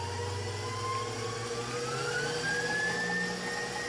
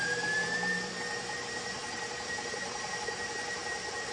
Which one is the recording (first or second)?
first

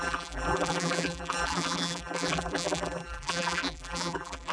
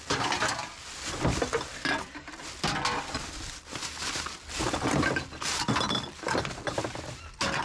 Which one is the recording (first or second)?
second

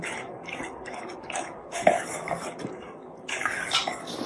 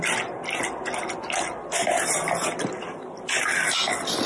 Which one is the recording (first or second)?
second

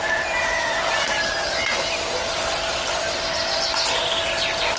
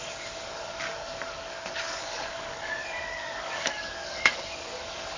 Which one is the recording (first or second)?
first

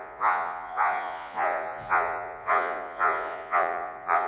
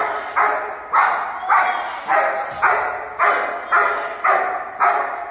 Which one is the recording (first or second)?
second